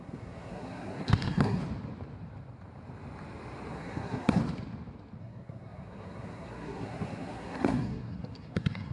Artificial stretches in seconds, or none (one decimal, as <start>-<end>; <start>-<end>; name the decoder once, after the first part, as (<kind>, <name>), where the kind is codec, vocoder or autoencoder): 0.0-1.6 (codec, SNAC); 3.7-4.4; 5.2-8.9